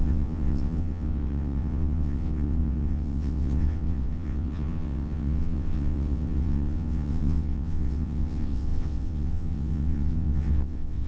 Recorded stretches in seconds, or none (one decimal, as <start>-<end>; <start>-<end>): none